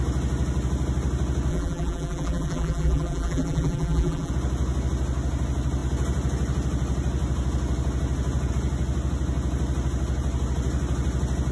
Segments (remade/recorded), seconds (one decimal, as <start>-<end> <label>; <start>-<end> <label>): 0.0-1.5 recorded; 1.5-4.3 remade; 4.3-11.5 recorded